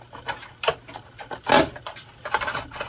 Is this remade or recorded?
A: recorded